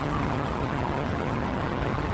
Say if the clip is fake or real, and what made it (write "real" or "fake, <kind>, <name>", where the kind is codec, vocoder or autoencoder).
fake, vocoder, HiFi-GAN